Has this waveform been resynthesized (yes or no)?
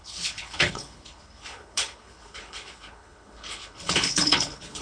yes